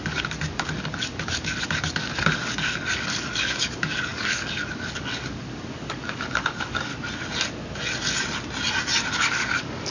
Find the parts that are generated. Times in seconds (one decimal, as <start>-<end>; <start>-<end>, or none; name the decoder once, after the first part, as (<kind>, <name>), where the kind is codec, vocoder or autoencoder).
0.0-6.9 (codec, DAC); 9.1-9.9

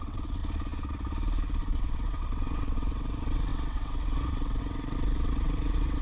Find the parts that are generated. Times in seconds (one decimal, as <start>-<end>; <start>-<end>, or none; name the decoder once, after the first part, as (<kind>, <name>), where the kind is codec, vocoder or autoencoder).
0.0-0.4 (vocoder, WaveNeXt); 1.6-6.0

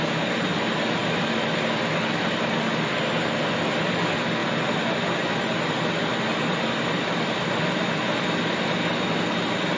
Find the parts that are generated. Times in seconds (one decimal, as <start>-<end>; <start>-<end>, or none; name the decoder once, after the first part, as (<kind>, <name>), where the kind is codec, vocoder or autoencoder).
none

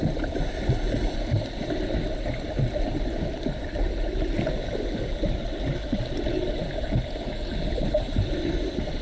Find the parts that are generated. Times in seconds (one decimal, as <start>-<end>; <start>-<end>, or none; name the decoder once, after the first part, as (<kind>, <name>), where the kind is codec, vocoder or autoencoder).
none

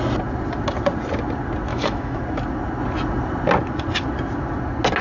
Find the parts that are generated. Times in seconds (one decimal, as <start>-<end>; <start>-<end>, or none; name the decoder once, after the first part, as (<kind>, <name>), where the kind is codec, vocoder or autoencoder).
1.7-2.2 (autoencoder, DAC-VAE)

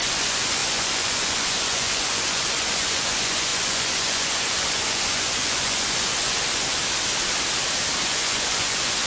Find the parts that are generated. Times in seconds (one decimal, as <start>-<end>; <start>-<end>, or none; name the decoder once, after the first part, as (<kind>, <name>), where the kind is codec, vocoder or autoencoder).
0.0-6.8 (vocoder, Vocos); 8.0-9.1